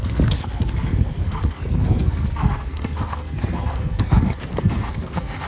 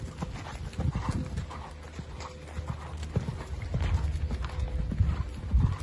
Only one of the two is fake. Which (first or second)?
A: first